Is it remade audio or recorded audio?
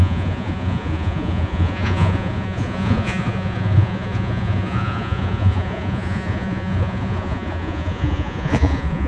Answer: remade